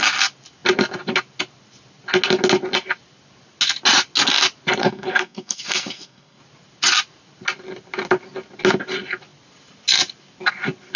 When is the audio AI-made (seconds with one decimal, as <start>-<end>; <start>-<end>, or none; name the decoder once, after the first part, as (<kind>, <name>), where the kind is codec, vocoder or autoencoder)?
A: 4.8-6.4 (codec, SNAC)